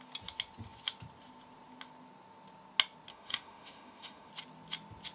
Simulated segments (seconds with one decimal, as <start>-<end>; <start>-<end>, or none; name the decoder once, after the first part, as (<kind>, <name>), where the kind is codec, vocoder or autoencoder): 3.1-4.3 (autoencoder, DAC-VAE)